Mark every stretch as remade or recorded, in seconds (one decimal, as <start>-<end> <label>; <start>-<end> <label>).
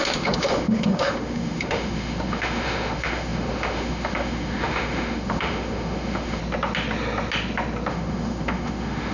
0.0-6.4 remade; 6.4-7.9 recorded; 7.9-9.1 remade